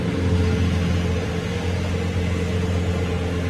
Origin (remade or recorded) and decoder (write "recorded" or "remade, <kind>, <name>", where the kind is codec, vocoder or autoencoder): recorded